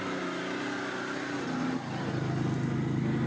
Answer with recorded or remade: recorded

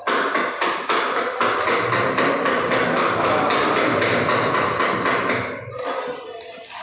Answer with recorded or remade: recorded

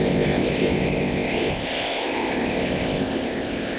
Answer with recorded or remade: remade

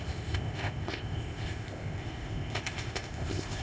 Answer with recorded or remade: remade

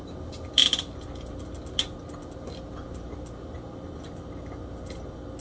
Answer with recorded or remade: recorded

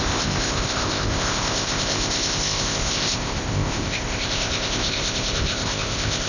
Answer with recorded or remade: remade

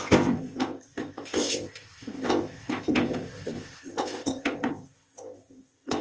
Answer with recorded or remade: remade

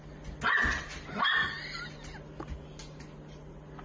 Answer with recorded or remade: recorded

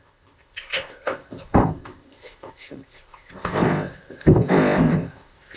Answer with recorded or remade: remade